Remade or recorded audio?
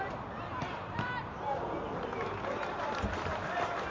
recorded